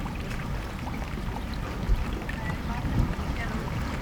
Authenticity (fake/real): fake